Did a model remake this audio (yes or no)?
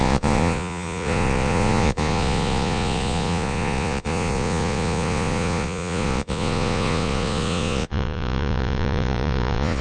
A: yes